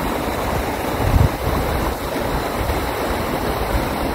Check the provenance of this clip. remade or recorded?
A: recorded